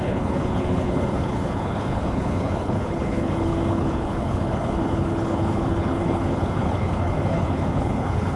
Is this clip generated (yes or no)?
yes